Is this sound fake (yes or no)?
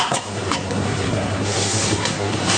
yes